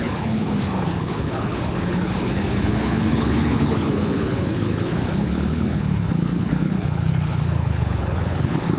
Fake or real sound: fake